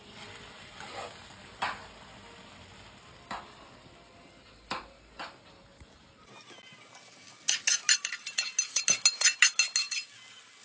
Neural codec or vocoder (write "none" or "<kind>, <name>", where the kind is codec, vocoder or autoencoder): none